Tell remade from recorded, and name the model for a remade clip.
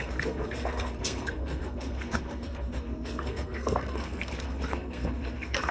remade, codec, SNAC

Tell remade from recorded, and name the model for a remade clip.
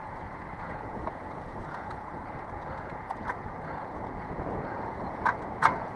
remade, vocoder, Vocos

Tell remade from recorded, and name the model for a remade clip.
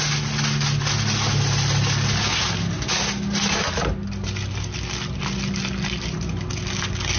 recorded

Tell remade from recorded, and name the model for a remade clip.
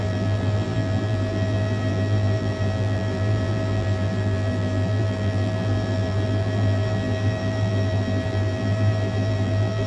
remade, vocoder, BigVGAN v2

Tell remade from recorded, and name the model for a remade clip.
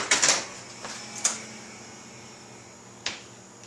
recorded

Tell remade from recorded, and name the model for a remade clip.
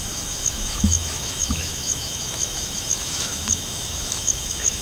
remade, autoencoder, DAC-VAE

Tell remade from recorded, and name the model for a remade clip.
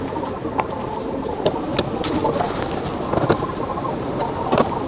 recorded